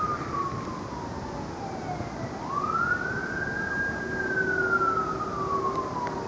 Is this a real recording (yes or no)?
yes